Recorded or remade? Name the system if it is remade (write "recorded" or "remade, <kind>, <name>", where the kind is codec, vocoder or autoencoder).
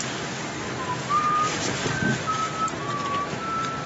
recorded